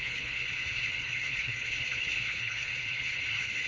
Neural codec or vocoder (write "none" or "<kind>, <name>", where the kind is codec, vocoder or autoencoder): codec, HILCodec